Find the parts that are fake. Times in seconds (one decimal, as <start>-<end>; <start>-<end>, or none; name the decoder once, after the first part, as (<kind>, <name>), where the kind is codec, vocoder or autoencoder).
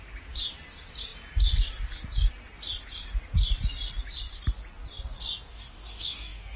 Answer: 5.5-6.6 (codec, DAC)